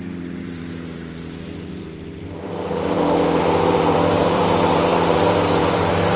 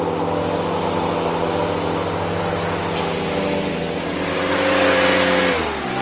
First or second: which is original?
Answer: second